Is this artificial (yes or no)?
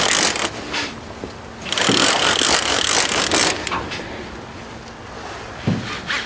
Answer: no